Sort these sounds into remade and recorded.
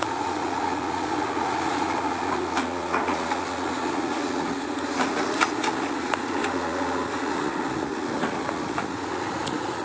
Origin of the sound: remade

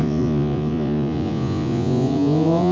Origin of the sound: remade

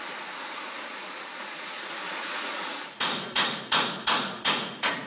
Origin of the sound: remade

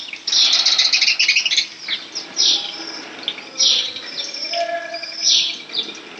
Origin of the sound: recorded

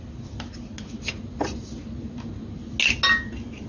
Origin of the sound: recorded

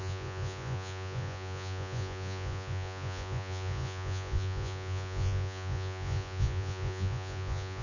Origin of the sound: remade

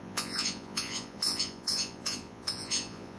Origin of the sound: remade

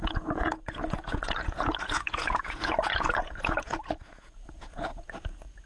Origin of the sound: remade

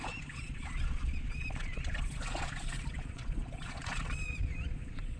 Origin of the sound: remade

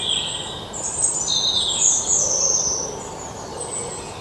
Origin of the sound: recorded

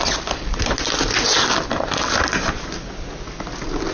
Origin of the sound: recorded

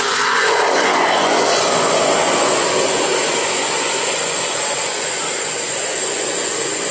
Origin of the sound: remade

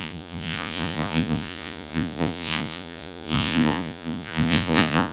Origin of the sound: remade